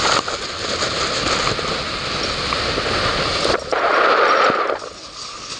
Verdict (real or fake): real